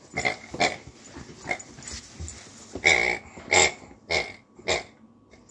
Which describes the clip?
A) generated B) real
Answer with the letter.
B